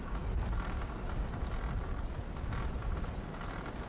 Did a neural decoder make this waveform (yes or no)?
no